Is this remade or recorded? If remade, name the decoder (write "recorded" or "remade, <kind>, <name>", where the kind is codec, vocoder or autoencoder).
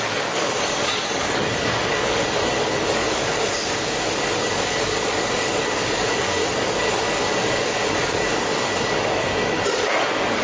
remade, codec, DAC